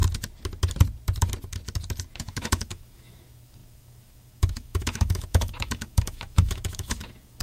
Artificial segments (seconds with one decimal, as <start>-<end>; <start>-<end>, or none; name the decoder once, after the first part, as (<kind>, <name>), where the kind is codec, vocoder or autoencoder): 2.2-7.4 (autoencoder, DAC-VAE)